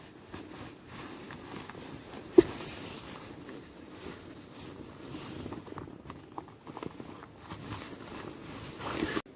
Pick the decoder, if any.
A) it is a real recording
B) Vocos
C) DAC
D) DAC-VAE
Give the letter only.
A